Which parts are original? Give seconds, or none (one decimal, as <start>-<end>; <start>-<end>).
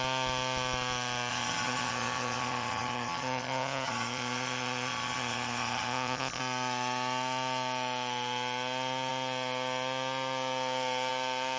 0.0-1.3; 6.4-11.6